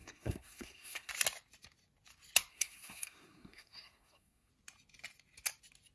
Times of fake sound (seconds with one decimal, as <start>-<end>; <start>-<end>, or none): 0.0-1.1; 2.5-4.5